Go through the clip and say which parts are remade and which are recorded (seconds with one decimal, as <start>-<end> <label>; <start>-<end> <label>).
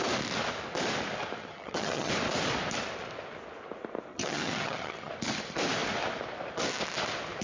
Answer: 0.0-1.4 recorded; 1.4-2.1 remade; 2.1-4.1 recorded; 4.1-5.1 remade; 5.1-7.4 recorded